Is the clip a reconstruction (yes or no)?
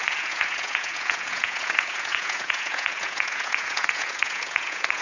yes